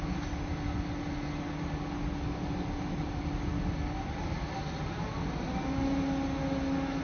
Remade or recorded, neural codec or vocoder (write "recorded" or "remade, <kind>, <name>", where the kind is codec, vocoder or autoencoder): recorded